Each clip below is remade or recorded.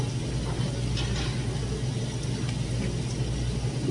recorded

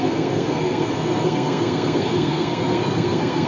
remade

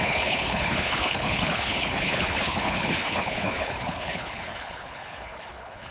remade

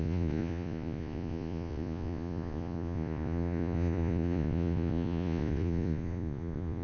remade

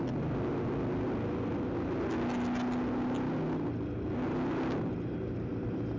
recorded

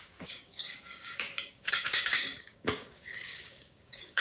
remade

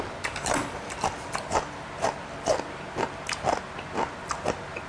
recorded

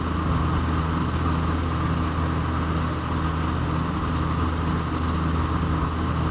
recorded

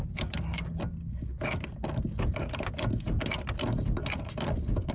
recorded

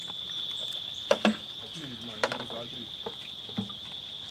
recorded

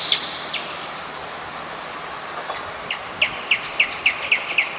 recorded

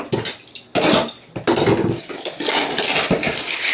recorded